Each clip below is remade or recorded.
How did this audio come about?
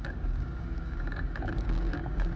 remade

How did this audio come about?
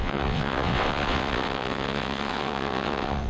remade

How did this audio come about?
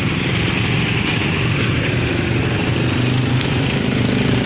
recorded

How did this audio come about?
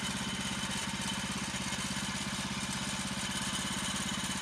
recorded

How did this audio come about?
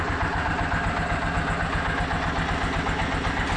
recorded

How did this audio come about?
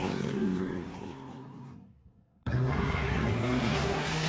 remade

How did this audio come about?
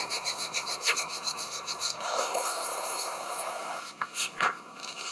remade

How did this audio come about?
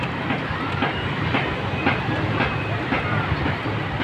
recorded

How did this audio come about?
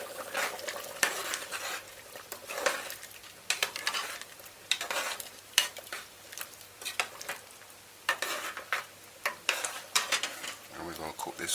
remade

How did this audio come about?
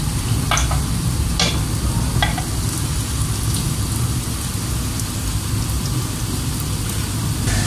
recorded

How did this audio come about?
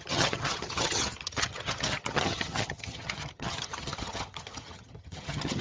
remade